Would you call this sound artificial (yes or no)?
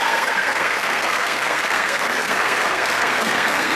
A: yes